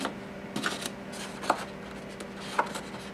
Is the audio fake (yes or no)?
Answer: no